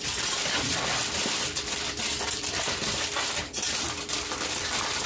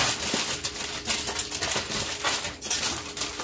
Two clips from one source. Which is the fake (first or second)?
first